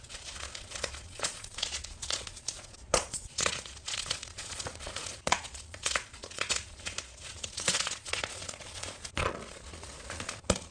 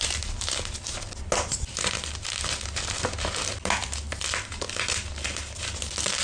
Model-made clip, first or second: first